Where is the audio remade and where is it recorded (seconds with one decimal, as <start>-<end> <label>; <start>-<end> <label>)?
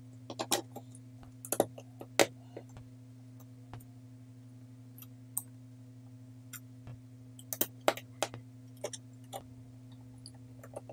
0.0-10.9 recorded